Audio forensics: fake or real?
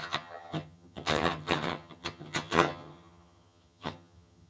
fake